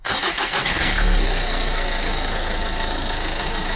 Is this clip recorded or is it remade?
remade